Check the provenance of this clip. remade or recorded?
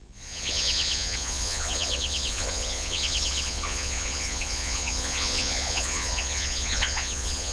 remade